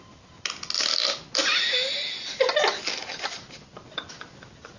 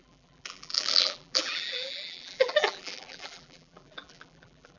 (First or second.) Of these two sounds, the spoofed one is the second